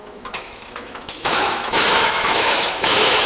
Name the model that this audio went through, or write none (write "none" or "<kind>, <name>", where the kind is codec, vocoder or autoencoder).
autoencoder, DAC-VAE